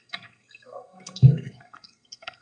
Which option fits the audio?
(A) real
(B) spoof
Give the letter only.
B